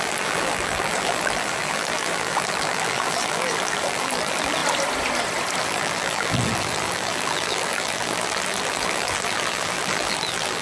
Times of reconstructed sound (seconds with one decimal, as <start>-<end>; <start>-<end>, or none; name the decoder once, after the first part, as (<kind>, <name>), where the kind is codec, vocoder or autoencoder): 0.0-4.6 (vocoder, BigVGAN v2); 5.6-10.6